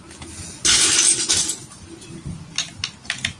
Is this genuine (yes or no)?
yes